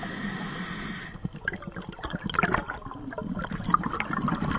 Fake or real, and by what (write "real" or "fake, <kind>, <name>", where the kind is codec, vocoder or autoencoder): real